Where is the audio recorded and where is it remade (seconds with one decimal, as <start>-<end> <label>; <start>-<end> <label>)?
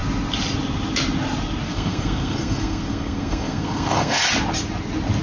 0.0-1.7 recorded; 1.7-4.2 remade; 4.2-5.2 recorded